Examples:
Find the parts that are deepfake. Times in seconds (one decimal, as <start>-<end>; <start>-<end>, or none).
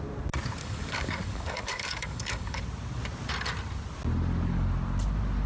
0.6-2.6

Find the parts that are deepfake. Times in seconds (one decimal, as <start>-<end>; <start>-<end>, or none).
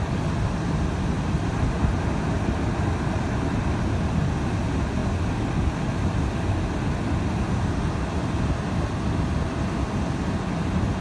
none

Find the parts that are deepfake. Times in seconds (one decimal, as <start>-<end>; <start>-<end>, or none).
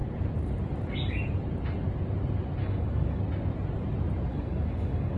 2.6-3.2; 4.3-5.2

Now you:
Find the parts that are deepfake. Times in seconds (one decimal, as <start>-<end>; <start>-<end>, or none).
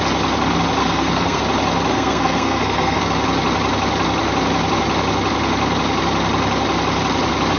0.8-1.4; 1.9-3.0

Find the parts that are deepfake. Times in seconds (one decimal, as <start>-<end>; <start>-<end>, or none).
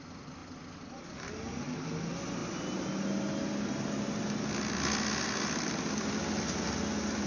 none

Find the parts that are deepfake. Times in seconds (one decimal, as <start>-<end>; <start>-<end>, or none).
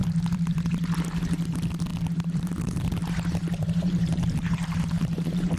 0.0-0.7; 1.9-5.6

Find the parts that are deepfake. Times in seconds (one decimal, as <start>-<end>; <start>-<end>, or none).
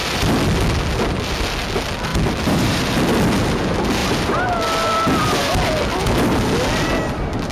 2.1-2.9; 4.0-4.6